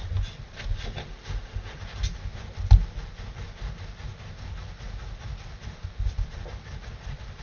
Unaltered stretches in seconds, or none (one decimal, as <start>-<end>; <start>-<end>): 0.0-1.0; 1.8-7.4